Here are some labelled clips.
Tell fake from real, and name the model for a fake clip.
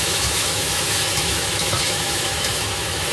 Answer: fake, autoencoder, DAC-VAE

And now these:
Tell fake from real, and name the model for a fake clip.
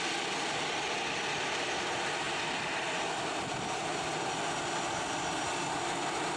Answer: real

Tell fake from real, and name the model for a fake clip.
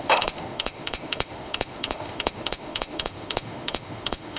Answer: fake, autoencoder, DAC-VAE